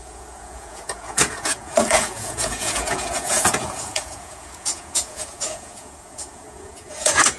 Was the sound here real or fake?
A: fake